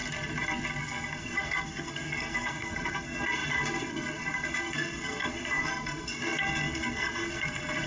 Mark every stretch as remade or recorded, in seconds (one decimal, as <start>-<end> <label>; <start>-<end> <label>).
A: 0.0-0.8 recorded; 0.8-7.9 remade